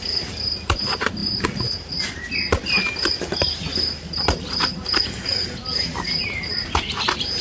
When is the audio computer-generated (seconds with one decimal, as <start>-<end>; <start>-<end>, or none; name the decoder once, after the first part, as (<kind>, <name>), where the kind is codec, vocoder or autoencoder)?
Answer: 5.6-7.4 (vocoder, BigVGAN v2)